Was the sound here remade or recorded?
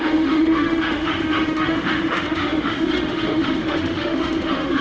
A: remade